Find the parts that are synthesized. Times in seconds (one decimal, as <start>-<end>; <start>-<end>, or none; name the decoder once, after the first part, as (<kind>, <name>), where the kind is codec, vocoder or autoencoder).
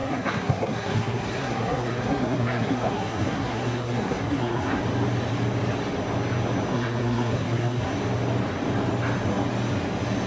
0.0-4.8 (codec, SNAC); 6.7-7.9